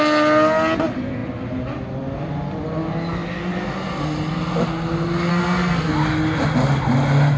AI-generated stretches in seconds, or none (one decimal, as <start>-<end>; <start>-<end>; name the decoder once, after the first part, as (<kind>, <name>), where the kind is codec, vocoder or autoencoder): 5.3-5.9 (codec, SNAC)